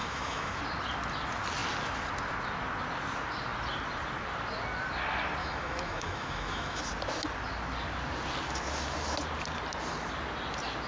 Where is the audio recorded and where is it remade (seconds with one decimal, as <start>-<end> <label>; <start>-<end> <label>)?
0.0-0.6 remade; 0.6-5.4 recorded; 5.4-6.8 remade; 6.8-10.9 recorded